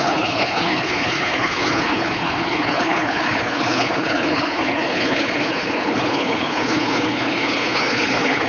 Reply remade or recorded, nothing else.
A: remade